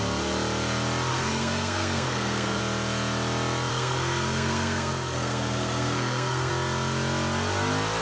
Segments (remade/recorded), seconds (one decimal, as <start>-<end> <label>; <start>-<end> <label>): 0.0-1.1 recorded; 1.1-2.6 remade; 2.6-3.7 recorded; 3.7-6.5 remade; 6.5-8.0 recorded